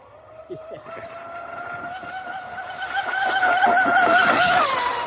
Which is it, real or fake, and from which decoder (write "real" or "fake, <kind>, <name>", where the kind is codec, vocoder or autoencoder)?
real